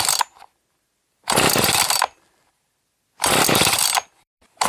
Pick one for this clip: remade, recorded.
recorded